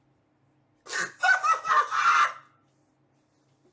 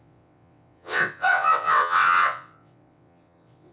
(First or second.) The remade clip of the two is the second